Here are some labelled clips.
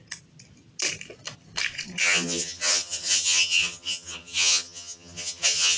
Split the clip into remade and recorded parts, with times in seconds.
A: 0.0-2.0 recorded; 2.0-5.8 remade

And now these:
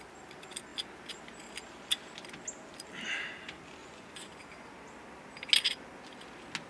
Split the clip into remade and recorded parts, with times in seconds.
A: 0.0-3.8 recorded; 3.8-4.4 remade; 4.4-6.7 recorded